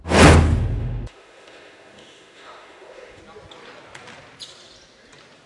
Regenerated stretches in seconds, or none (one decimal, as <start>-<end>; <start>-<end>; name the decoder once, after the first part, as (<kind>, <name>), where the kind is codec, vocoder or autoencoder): 0.8-3.2 (autoencoder, DAC-VAE)